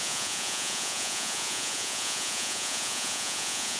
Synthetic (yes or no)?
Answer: yes